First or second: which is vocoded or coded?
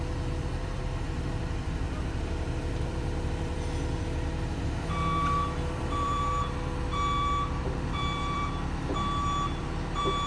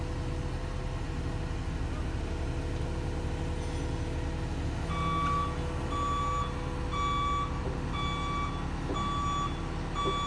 first